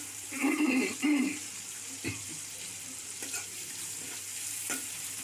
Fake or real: fake